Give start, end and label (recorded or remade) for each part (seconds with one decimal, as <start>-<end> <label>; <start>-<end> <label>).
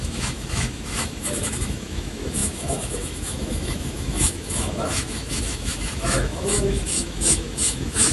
0.0-8.1 remade